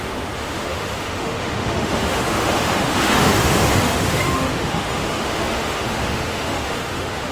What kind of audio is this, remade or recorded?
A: remade